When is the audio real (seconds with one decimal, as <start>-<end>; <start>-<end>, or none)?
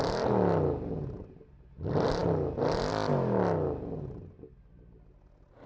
0.0-5.7